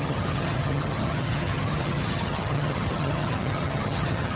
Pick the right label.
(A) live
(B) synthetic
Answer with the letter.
B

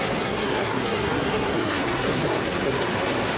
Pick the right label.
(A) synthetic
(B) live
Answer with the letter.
A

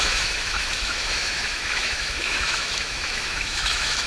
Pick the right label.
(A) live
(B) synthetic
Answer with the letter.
B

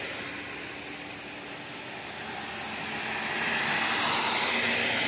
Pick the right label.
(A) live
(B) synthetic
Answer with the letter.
A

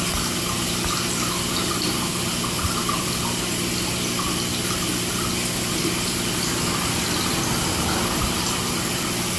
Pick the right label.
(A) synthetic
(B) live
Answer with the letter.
B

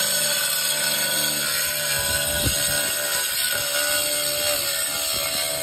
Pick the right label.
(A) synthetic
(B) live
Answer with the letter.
B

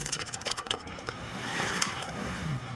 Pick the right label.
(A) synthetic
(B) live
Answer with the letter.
A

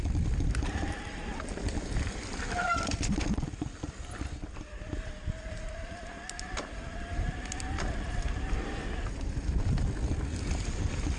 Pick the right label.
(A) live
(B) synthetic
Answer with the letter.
A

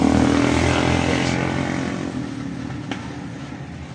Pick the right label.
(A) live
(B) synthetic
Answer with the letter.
A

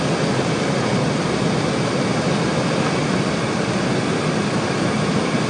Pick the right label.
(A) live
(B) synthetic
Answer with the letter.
A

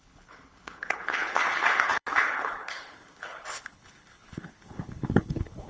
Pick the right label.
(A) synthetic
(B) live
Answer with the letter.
A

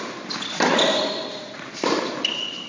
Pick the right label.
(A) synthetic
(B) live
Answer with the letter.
B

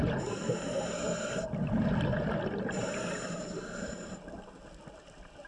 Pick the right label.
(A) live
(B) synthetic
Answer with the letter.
A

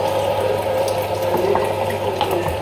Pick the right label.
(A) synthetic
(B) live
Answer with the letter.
B